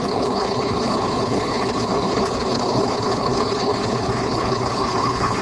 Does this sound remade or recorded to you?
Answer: remade